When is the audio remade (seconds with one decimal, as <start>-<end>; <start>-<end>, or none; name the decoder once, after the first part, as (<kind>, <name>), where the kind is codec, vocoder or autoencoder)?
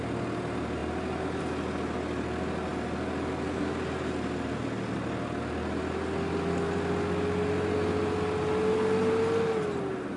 none